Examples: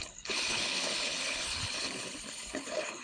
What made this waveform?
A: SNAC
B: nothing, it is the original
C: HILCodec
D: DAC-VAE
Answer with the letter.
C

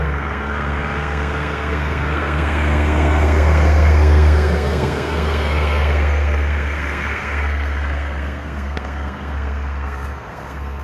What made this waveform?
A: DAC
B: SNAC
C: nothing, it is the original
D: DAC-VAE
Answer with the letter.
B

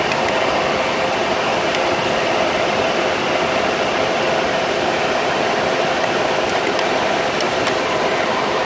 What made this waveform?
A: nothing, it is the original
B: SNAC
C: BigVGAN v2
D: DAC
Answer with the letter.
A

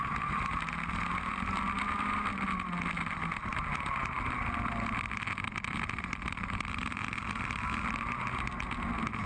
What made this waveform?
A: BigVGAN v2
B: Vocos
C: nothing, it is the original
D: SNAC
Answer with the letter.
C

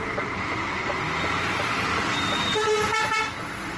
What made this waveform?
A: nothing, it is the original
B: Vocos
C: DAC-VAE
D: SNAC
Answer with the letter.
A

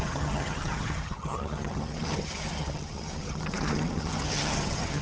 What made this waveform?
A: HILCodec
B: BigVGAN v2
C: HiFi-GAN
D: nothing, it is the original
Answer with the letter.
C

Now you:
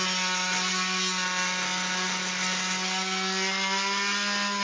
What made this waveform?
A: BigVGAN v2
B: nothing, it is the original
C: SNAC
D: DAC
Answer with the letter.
B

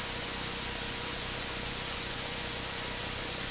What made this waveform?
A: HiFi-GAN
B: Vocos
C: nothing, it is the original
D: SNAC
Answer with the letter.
B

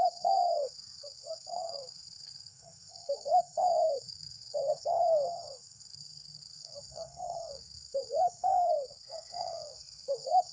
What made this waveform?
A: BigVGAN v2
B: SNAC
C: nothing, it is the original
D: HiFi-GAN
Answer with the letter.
B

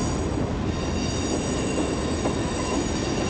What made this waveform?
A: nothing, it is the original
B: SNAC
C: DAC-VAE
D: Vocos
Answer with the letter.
A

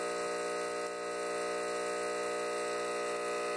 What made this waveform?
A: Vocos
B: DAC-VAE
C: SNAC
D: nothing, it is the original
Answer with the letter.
D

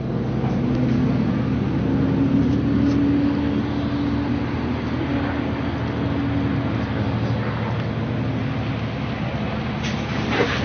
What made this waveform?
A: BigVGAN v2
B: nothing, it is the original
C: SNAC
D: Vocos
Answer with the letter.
B